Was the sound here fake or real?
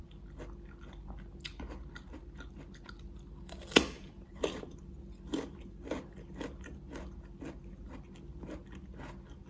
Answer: real